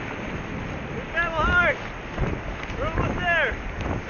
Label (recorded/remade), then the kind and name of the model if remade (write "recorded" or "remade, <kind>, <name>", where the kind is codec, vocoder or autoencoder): recorded